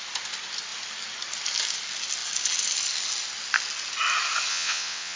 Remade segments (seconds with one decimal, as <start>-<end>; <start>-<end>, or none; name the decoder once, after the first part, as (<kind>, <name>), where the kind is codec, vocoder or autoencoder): 4.5-5.2 (vocoder, WaveNeXt)